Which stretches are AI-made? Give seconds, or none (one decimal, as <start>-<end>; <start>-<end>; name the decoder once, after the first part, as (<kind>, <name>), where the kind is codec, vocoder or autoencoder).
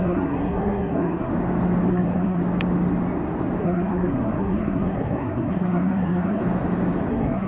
0.0-1.3 (codec, SNAC); 1.9-2.4; 3.6-6.4; 7.1-7.5